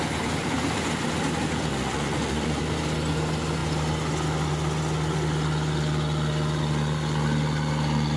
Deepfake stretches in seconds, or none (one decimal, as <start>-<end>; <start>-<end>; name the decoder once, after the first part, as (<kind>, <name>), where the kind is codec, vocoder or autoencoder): 1.7-2.6 (vocoder, Vocos)